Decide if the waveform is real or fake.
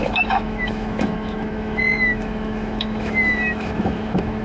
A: fake